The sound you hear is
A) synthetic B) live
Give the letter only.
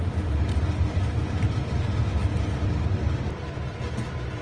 B